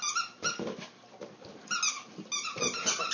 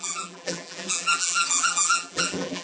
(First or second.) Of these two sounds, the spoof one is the second